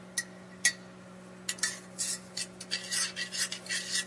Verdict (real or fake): real